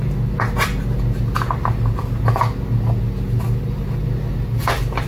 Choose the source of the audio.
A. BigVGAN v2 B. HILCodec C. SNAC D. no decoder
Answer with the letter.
D